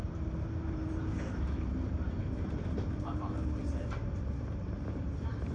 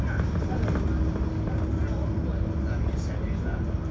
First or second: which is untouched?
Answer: second